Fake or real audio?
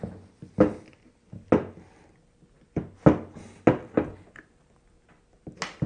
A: real